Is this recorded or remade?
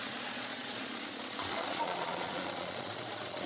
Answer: remade